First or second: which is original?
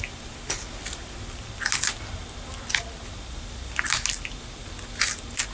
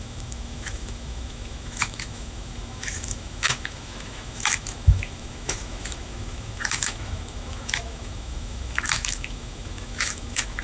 first